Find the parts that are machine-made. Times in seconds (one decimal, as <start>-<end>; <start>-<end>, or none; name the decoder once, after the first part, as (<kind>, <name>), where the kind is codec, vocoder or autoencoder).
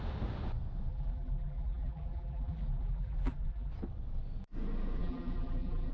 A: 0.9-3.7 (vocoder, BigVGAN v2); 5.0-5.9